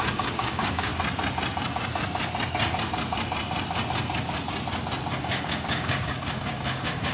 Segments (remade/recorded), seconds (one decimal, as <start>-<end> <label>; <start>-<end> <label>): 0.0-0.9 remade; 0.9-5.2 recorded; 5.2-7.1 remade